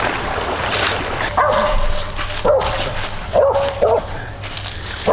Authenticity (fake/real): real